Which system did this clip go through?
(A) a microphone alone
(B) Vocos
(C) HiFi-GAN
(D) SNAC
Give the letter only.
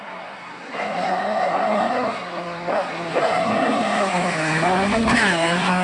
D